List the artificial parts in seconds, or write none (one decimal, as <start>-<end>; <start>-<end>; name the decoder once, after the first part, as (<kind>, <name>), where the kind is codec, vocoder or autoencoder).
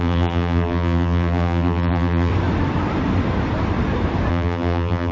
0.0-2.3 (vocoder, BigVGAN v2); 4.3-5.1